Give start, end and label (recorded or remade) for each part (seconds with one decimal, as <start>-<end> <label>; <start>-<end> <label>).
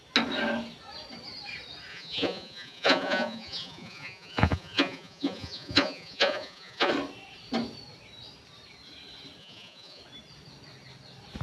0.0-1.9 recorded; 1.9-6.9 remade; 6.9-9.4 recorded; 9.4-10.0 remade; 10.0-11.4 recorded